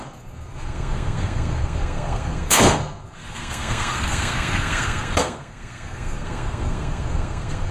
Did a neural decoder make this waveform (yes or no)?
yes